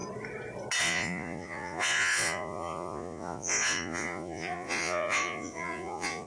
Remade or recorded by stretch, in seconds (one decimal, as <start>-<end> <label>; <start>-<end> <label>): 0.0-0.8 recorded; 0.8-6.3 remade